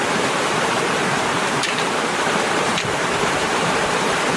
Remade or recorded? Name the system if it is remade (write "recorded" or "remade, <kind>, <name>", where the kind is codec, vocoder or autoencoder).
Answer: remade, vocoder, BigVGAN v2